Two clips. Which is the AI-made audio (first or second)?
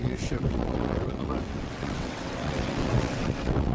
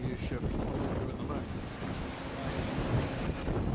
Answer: first